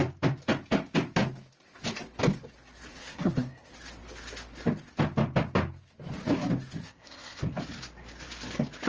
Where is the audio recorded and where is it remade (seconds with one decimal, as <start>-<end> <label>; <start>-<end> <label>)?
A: 0.0-2.9 recorded; 2.9-3.7 remade; 3.7-6.8 recorded; 6.8-7.4 remade; 7.4-8.9 recorded

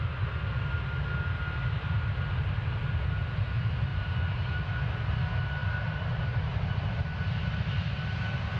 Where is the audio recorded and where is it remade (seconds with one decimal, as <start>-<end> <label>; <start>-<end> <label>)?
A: 0.0-3.9 recorded; 3.9-4.6 remade; 4.6-5.6 recorded; 5.6-6.4 remade; 6.4-8.6 recorded

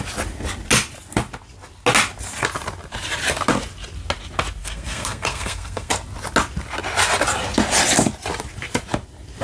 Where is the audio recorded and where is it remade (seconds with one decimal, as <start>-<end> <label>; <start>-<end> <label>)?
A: 0.0-4.6 recorded; 4.6-5.9 remade; 5.9-9.4 recorded

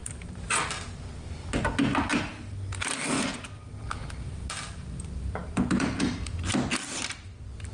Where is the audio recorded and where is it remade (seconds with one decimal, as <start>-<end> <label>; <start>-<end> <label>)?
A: 0.0-0.6 remade; 0.6-7.7 recorded

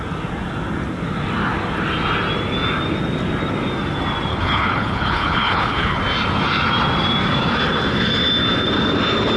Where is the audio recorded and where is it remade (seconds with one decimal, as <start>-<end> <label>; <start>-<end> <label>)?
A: 0.0-4.3 recorded; 4.3-6.0 remade; 6.0-9.4 recorded

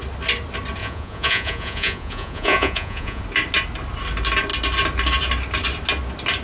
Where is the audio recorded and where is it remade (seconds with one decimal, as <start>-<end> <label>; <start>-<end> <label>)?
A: 0.0-0.8 recorded; 0.8-3.2 remade; 3.2-6.4 recorded

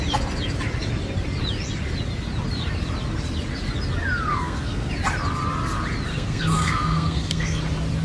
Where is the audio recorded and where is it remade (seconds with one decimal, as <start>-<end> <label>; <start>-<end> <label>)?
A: 0.0-4.3 recorded; 4.3-4.9 remade; 4.9-6.1 recorded; 6.1-7.6 remade; 7.6-8.0 recorded

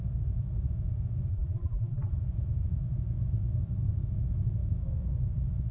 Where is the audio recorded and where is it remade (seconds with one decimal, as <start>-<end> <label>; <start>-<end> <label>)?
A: 0.0-1.3 recorded; 1.3-2.1 remade; 2.1-5.7 recorded